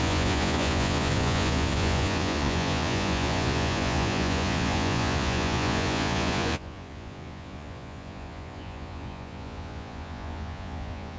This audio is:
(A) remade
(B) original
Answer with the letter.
A